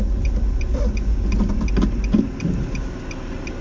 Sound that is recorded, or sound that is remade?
recorded